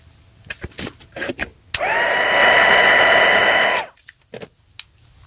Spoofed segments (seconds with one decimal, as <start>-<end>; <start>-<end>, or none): none